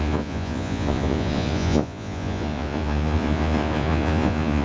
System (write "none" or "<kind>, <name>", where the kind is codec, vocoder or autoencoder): vocoder, Vocos